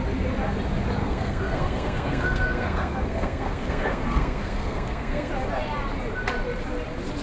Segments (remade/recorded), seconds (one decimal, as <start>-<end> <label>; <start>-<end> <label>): 0.0-1.0 recorded; 1.0-5.3 remade; 5.3-7.2 recorded